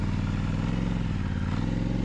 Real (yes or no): yes